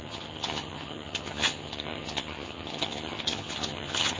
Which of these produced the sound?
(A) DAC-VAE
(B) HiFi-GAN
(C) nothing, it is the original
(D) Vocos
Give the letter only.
B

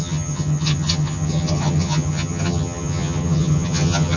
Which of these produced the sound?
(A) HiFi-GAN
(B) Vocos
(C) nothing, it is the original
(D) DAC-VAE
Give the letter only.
A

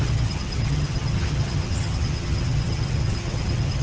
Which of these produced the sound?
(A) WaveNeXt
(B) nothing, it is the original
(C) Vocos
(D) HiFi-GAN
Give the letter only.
D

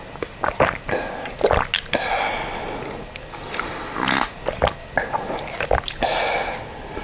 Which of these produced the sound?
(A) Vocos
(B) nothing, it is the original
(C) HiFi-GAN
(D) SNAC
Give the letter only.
B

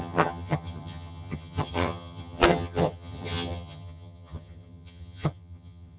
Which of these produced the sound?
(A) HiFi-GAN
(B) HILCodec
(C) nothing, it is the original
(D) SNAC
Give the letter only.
A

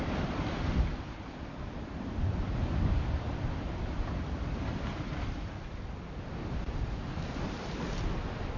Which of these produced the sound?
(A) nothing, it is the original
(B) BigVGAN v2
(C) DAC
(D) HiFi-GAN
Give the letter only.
A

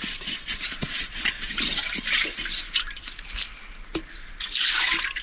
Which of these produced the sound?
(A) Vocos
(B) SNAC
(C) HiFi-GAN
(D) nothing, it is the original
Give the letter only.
D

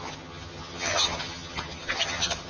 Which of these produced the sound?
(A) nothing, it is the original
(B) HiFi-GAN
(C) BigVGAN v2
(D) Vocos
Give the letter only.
B